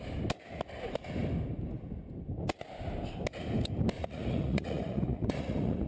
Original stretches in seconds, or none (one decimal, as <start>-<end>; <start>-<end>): 0.0-4.0